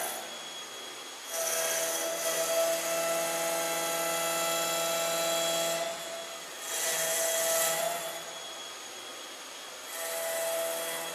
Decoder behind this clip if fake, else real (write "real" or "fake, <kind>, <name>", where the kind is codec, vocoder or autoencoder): real